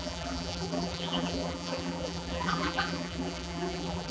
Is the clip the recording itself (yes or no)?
no